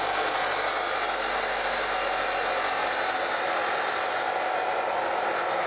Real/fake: real